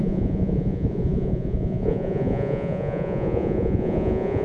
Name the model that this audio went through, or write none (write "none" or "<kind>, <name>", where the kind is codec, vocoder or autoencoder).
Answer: vocoder, Vocos